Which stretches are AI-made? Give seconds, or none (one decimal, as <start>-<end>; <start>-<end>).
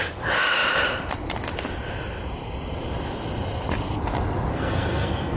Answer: 4.5-5.4